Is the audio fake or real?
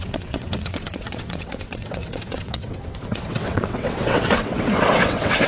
fake